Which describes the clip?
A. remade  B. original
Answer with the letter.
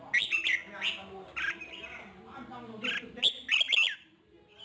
B